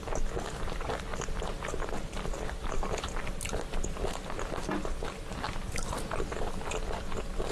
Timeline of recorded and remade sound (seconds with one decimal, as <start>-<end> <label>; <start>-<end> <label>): 0.0-7.5 recorded